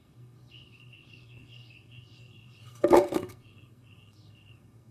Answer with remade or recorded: remade